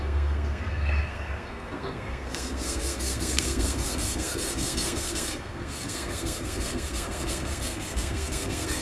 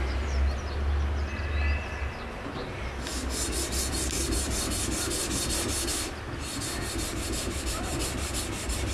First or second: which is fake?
first